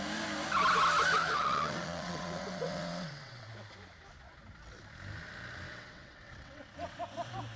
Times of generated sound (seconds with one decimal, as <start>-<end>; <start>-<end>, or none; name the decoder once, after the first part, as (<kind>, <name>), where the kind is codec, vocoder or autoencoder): 1.2-3.5 (vocoder, WaveNeXt); 5.7-6.6